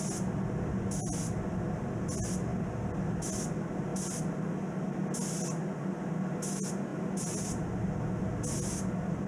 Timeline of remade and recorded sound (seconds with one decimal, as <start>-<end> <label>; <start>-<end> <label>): 0.0-9.3 recorded